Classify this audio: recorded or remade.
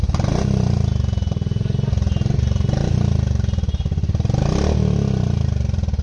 recorded